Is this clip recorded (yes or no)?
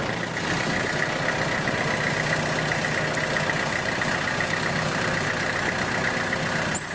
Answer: yes